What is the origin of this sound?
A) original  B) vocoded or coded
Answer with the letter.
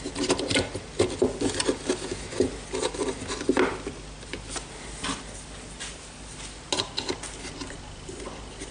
A